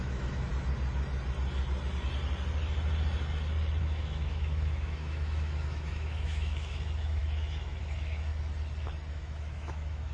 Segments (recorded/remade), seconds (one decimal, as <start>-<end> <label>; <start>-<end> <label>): 0.0-0.5 remade; 0.5-3.8 recorded; 3.8-8.3 remade; 8.3-9.1 recorded; 9.1-10.1 remade